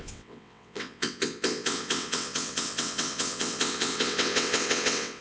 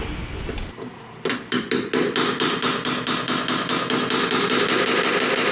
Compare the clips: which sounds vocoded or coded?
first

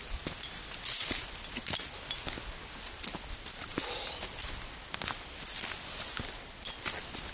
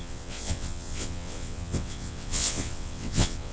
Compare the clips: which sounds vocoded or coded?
second